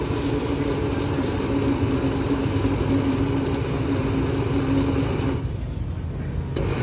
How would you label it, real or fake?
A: real